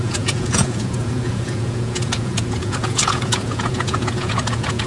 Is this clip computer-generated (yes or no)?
yes